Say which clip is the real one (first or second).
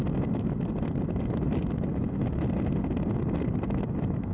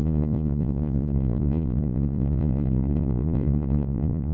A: first